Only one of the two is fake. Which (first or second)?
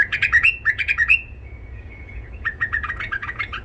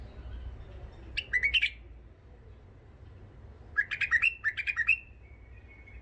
first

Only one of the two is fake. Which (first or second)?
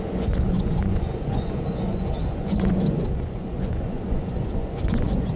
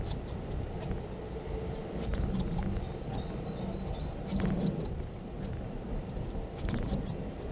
first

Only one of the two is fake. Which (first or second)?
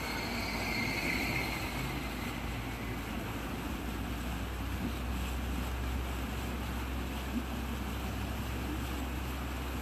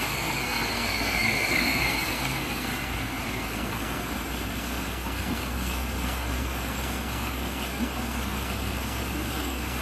second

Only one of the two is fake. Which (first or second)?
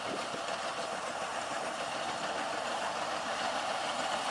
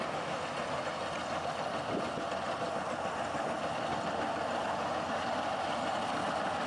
first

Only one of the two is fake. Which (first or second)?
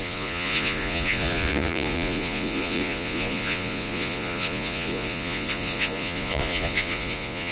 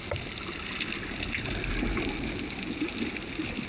first